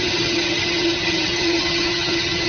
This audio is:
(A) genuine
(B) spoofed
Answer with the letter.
B